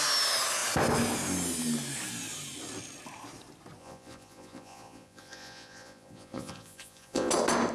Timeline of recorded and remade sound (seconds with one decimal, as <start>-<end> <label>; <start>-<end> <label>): 0.0-3.8 recorded; 3.8-7.3 remade; 7.3-7.7 recorded